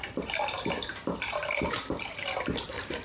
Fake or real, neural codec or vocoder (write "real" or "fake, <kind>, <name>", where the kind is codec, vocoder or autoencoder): fake, vocoder, BigVGAN v2